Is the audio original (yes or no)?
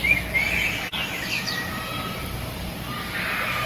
yes